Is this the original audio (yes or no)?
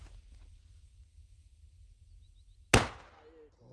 yes